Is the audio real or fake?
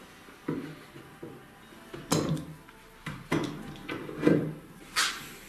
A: real